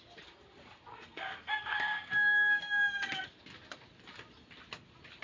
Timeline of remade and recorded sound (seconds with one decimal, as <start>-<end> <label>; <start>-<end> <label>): 0.0-0.9 recorded; 0.9-3.3 remade; 3.3-5.2 recorded